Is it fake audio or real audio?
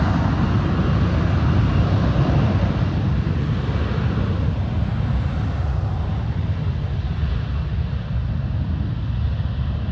real